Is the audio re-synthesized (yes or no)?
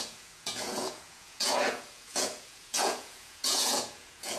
yes